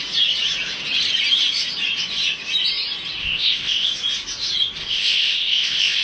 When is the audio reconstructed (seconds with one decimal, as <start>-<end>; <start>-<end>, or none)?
3.2-3.9; 4.8-6.0